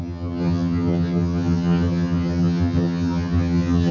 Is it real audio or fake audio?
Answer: fake